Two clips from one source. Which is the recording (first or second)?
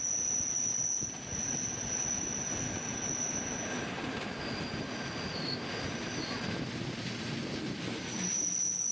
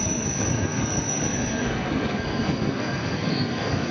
first